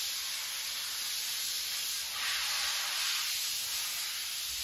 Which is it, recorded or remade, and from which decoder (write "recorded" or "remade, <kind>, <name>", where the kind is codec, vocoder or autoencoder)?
recorded